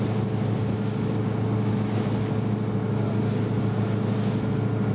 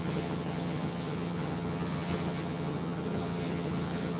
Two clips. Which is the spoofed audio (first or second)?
second